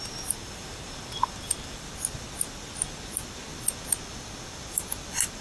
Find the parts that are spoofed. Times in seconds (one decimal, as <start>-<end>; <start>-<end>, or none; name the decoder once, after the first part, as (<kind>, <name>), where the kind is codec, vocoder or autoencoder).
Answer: none